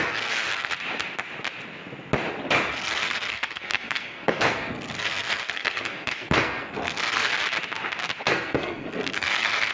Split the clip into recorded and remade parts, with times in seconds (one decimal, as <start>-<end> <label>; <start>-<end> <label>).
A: 0.0-0.7 remade; 0.7-2.7 recorded; 2.7-7.3 remade; 7.3-8.2 recorded; 8.2-9.7 remade